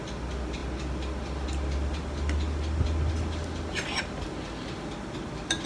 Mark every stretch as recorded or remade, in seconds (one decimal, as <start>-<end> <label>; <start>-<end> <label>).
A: 0.0-5.7 recorded